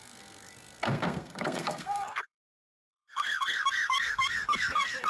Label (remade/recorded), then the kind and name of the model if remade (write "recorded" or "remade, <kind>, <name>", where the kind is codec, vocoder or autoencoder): remade, codec, SNAC